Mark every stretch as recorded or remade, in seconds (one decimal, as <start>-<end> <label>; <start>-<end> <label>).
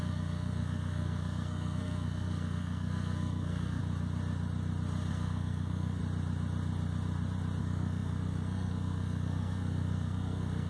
0.0-3.8 remade; 3.8-5.1 recorded; 5.1-6.0 remade; 6.0-7.6 recorded; 7.6-10.7 remade